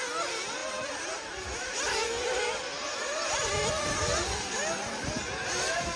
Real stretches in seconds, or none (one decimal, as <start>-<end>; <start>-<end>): 0.0-6.0